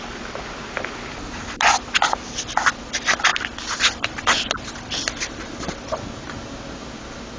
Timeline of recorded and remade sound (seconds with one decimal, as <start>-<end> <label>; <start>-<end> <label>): 0.0-7.4 recorded